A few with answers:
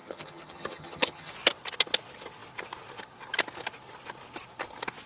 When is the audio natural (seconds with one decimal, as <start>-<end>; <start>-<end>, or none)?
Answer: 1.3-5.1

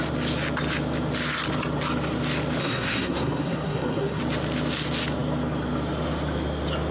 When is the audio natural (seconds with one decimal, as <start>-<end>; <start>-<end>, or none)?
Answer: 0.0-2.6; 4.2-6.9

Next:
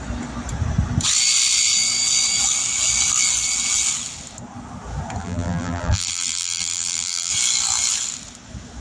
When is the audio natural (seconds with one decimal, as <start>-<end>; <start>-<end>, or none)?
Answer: 0.0-5.2; 7.3-8.8

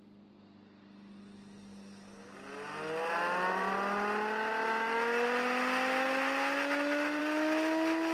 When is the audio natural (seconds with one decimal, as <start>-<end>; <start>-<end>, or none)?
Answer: 0.0-8.1

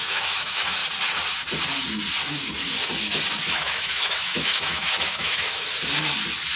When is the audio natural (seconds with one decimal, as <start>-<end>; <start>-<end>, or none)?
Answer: 0.8-3.5; 5.7-6.6

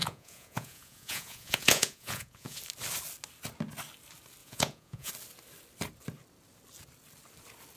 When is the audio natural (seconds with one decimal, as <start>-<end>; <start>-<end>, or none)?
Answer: 2.6-4.4; 5.1-7.8

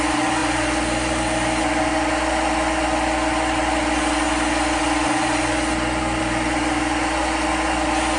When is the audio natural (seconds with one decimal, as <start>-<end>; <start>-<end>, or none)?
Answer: 0.0-8.2